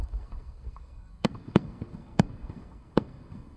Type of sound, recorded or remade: remade